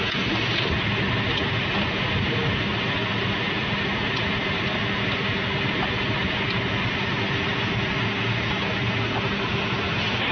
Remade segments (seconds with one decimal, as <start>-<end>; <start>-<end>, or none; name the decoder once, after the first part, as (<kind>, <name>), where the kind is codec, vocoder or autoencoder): none